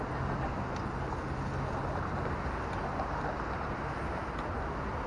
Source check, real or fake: real